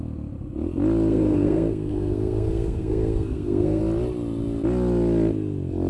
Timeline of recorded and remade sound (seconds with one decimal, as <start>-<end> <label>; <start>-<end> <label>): 0.0-1.1 recorded; 1.1-3.8 remade; 3.8-5.9 recorded